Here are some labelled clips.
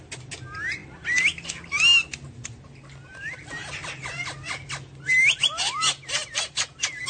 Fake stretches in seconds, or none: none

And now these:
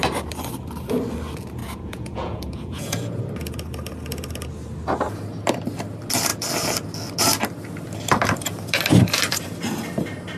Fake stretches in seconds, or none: 1.6-3.2 (vocoder, Vocos)

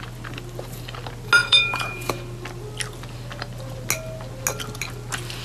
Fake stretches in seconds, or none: 1.4-2.1 (vocoder, Vocos)

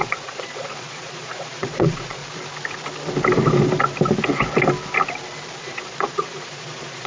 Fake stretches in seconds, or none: 0.0-2.2 (vocoder, Vocos); 5.6-7.1

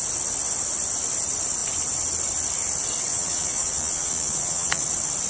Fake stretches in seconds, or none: 3.1-4.8 (vocoder, Vocos)

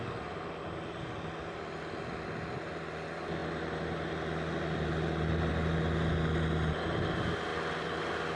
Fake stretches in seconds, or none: none

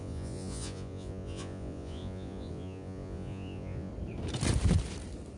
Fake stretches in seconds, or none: 0.0-3.9 (vocoder, Vocos)